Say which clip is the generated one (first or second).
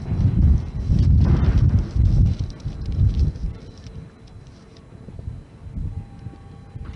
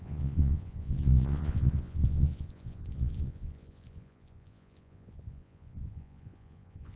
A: second